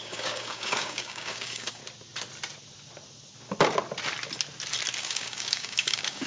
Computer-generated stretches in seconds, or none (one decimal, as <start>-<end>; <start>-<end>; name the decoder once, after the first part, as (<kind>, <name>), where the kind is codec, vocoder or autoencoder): 0.0-1.8 (codec, DAC); 5.0-6.3